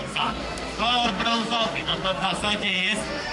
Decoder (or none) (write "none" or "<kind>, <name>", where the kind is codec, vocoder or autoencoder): codec, SNAC